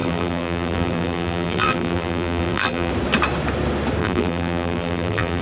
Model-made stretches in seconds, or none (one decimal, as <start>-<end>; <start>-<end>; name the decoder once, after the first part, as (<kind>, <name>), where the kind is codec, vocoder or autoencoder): 0.0-2.9 (vocoder, BigVGAN v2); 4.0-5.4

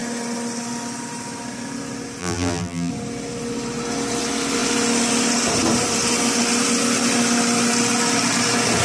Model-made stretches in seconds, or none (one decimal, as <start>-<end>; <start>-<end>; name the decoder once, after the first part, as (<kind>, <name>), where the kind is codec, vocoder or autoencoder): 2.2-2.9 (vocoder, BigVGAN v2)

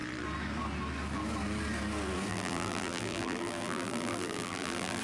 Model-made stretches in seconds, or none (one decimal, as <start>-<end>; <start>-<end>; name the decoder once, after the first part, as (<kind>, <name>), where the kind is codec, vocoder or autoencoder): 2.3-5.0 (vocoder, BigVGAN v2)